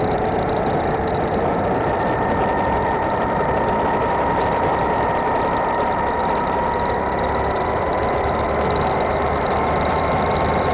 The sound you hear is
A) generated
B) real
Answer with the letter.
A